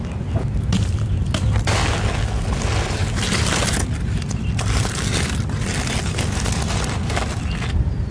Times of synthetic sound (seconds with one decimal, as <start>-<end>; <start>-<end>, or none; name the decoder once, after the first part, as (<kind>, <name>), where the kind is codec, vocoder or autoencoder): none